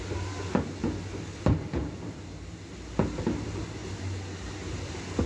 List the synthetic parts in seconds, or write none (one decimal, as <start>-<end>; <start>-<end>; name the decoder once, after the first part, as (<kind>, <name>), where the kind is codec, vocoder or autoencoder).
none